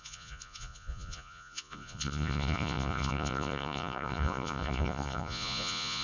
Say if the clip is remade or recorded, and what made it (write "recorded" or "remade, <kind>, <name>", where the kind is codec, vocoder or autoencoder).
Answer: remade, vocoder, Vocos